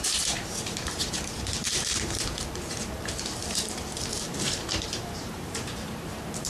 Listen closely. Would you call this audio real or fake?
fake